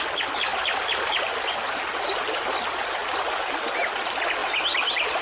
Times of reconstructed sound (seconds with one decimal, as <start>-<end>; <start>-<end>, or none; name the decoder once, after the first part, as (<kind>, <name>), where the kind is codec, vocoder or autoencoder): 0.5-2.4 (vocoder, BigVGAN v2); 3.0-3.5; 4.4-5.2